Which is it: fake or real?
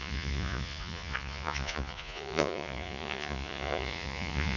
fake